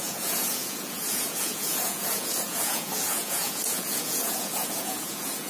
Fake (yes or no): yes